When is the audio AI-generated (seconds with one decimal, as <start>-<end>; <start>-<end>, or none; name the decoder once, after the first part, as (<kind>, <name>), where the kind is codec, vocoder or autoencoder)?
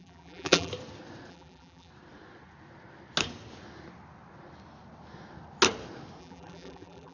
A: 0.0-0.7 (vocoder, BigVGAN v2); 1.3-1.9; 6.2-7.1